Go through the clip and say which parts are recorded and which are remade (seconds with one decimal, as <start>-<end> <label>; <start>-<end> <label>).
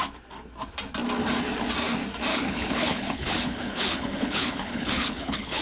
0.0-2.3 recorded; 2.3-5.6 remade